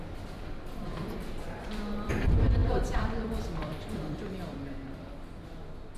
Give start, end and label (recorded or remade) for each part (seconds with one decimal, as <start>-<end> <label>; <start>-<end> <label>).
0.0-0.9 recorded; 0.9-2.1 remade; 2.1-2.6 recorded; 2.6-4.3 remade; 4.3-6.0 recorded